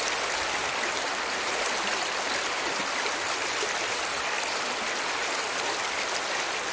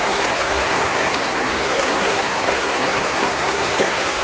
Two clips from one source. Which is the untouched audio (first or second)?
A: first